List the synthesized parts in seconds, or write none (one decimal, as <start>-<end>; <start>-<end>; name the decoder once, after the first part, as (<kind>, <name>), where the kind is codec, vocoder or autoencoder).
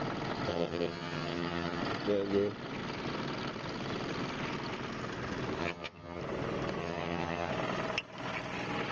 0.5-1.8 (vocoder, HiFi-GAN); 5.6-6.2; 6.8-7.5